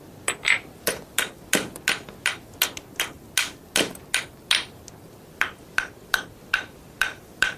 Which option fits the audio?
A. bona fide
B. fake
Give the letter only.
A